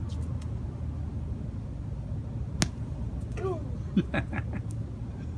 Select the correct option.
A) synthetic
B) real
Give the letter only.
B